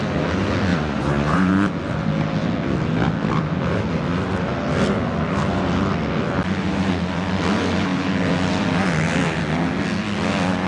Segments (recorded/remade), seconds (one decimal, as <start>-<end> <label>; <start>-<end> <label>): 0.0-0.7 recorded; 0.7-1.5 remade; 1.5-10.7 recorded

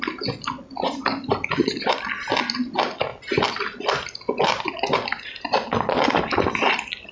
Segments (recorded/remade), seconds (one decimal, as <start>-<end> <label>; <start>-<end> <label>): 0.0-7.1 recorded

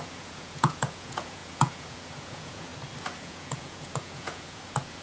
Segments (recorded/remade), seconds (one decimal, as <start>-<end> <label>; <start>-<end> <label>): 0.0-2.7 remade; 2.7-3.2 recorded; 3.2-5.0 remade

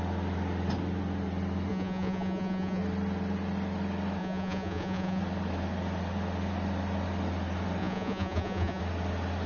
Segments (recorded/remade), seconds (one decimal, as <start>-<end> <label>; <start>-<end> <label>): 0.0-1.7 recorded; 1.7-2.8 remade; 2.8-4.2 recorded; 4.2-5.2 remade; 5.2-7.8 recorded; 7.8-8.8 remade; 8.8-9.5 recorded

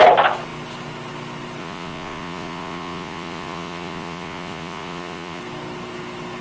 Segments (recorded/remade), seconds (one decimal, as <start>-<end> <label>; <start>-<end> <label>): 0.0-1.6 recorded; 1.6-5.4 remade; 5.4-6.4 recorded

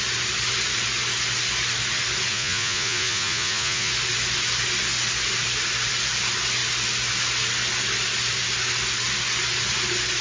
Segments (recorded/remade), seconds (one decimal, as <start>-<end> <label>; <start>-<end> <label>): 0.0-2.3 recorded; 2.3-3.9 remade; 3.9-10.2 recorded

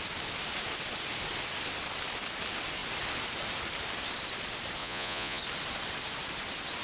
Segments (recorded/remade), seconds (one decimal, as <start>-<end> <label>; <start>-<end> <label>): 0.0-4.8 recorded; 4.8-5.4 remade; 5.4-6.8 recorded